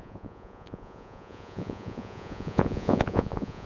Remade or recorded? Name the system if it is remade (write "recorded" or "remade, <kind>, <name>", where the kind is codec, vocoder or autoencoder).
remade, vocoder, Vocos